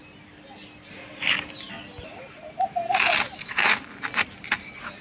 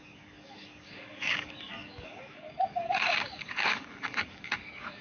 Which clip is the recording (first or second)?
first